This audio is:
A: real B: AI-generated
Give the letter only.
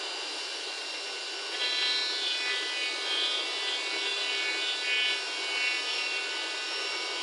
A